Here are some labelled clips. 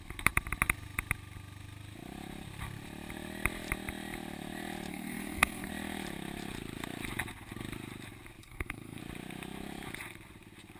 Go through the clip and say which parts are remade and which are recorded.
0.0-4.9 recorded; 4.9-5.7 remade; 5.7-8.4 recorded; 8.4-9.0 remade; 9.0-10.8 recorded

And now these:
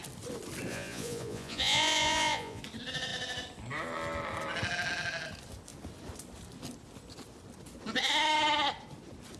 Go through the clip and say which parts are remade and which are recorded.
0.0-0.7 recorded; 0.7-2.6 remade; 2.6-9.4 recorded

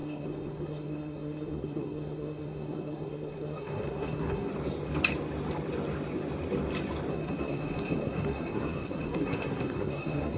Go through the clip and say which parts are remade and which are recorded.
0.0-4.5 remade; 4.5-7.1 recorded; 7.1-10.4 remade

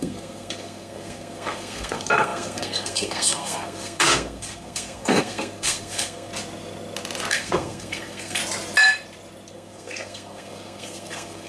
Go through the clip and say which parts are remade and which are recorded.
0.0-6.3 remade; 6.3-7.3 recorded; 7.3-8.4 remade; 8.4-9.5 recorded; 9.5-11.5 remade

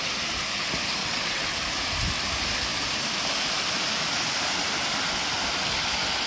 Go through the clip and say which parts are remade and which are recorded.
0.0-1.0 recorded; 1.0-1.5 remade; 1.5-6.3 recorded

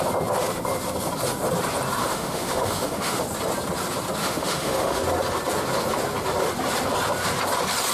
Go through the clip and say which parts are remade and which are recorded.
0.0-2.0 recorded; 2.0-3.2 remade; 3.2-4.2 recorded; 4.2-5.0 remade; 5.0-7.9 recorded

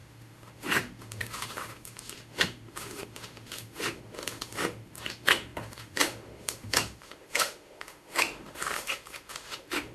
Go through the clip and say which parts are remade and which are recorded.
0.0-9.9 remade